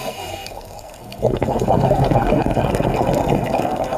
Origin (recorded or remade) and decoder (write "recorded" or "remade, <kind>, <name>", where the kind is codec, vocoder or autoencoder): remade, codec, SNAC